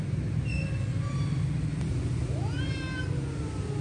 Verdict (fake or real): real